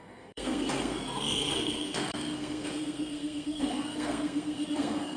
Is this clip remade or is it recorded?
remade